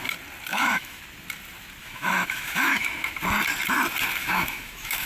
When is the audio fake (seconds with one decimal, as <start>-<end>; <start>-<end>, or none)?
0.5-1.0; 1.8-3.1; 4.2-5.1